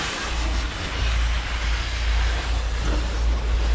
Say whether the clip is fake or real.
real